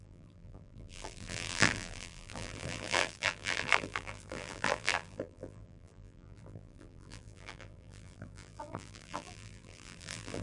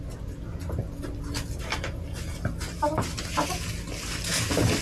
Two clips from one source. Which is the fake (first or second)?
first